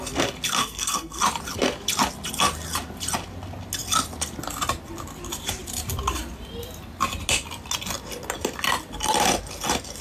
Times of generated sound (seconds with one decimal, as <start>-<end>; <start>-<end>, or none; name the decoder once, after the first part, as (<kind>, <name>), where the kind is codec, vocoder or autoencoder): 0.6-1.2 (codec, SNAC)